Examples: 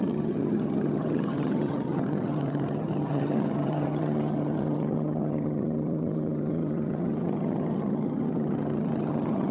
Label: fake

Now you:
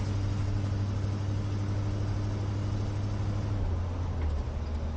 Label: real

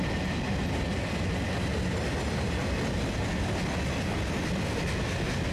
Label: real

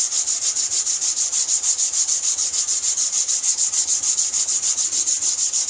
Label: real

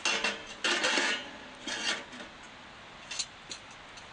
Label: real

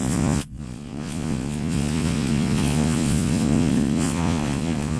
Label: fake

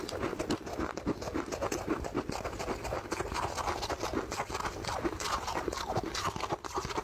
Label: real